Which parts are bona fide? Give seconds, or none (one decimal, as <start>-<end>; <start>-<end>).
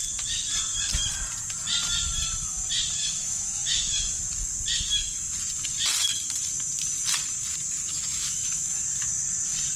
0.0-3.0; 4.1-7.9; 8.8-9.8